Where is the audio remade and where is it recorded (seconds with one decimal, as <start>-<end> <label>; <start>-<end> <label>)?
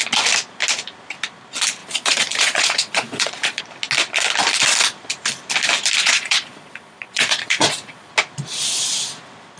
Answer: 0.0-1.8 recorded; 1.8-3.6 remade; 3.6-6.0 recorded; 6.0-8.1 remade; 8.1-9.6 recorded